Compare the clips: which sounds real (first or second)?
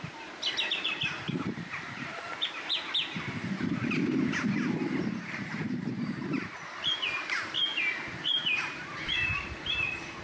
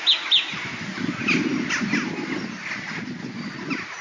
second